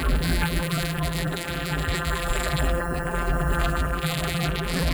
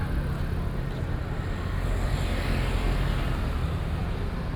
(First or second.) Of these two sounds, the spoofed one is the first